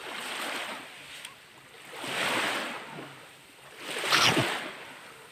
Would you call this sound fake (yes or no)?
no